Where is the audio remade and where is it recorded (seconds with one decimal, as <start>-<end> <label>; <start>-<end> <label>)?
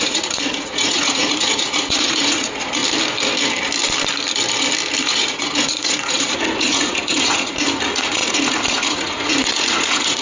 0.0-2.8 remade; 2.8-5.0 recorded; 5.0-10.2 remade